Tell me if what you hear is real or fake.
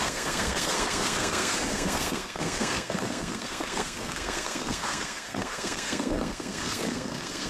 fake